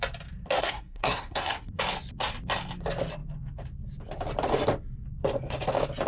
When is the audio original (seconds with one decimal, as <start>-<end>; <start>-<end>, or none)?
0.0-0.6; 1.8-6.1